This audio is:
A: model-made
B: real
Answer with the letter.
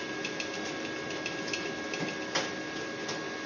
B